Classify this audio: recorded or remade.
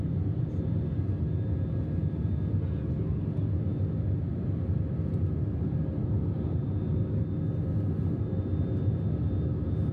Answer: recorded